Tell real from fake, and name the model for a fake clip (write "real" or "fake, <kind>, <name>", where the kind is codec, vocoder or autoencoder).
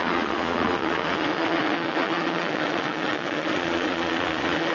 fake, vocoder, Vocos